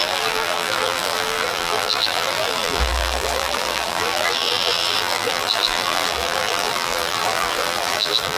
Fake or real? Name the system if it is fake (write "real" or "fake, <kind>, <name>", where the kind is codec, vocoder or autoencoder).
fake, vocoder, BigVGAN v2